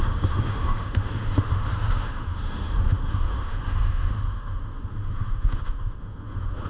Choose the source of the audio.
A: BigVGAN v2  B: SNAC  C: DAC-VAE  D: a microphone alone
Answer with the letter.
C